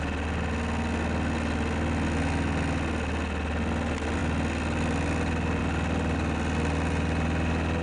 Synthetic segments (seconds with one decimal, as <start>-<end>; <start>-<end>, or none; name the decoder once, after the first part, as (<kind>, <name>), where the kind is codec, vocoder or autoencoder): none